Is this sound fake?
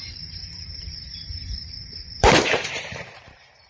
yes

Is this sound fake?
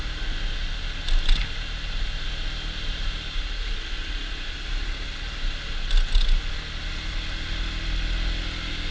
no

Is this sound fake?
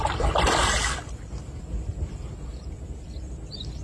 no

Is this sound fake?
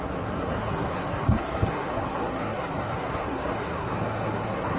yes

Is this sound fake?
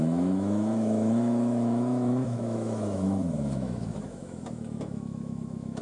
yes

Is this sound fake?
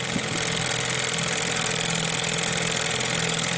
no